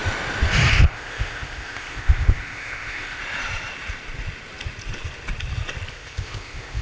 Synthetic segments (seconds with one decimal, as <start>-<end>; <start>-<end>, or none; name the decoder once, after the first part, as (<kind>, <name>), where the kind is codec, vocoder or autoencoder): 0.7-3.2 (codec, ZipCodec); 5.9-6.8